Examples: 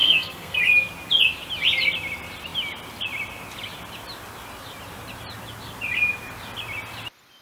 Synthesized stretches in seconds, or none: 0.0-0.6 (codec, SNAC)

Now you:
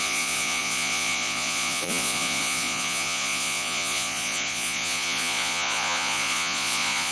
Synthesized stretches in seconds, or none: 0.0-7.1 (vocoder, Vocos)

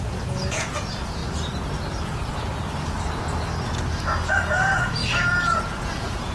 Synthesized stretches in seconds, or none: 0.0-1.2 (vocoder, Vocos); 4.3-5.0; 5.6-6.3

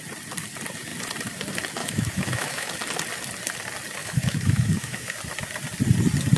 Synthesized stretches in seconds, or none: 1.8-2.7 (autoencoder, DAC-VAE); 4.0-5.2

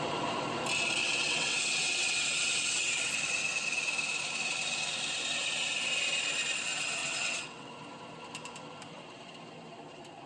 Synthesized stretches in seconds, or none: 1.0-3.1 (vocoder, WaveNeXt); 7.0-7.7

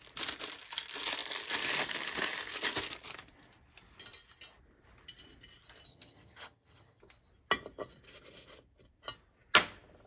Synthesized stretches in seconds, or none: 5.9-7.0 (vocoder, HiFi-GAN)

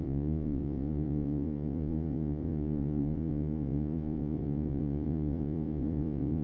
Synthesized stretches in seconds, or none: 0.0-6.4 (vocoder, Vocos)